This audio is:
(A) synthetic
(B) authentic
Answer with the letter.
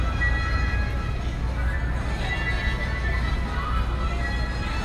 B